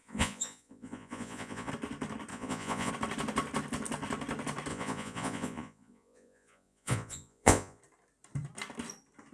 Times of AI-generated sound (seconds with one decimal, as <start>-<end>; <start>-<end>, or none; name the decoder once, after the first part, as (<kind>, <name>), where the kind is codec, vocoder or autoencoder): 0.0-1.7 (vocoder, Vocos); 2.3-2.9; 4.7-7.8